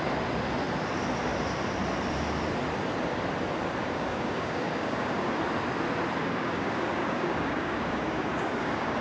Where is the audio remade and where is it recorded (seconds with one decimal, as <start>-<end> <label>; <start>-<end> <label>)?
0.0-3.8 recorded; 3.8-5.4 remade; 5.4-6.2 recorded; 6.2-9.0 remade